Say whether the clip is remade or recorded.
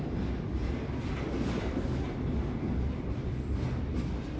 recorded